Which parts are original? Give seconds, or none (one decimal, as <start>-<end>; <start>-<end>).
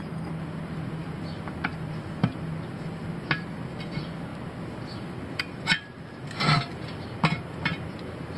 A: 0.0-8.4